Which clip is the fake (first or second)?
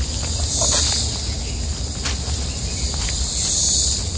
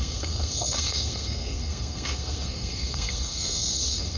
second